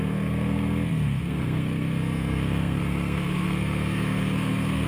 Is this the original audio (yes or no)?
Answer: no